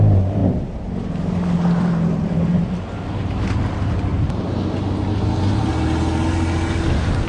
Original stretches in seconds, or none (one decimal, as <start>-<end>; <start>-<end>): 0.0-0.4; 1.1-7.3

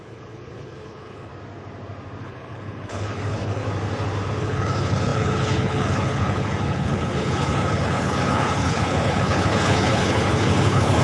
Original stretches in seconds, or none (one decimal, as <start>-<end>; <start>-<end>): 1.3-2.2; 3.6-4.4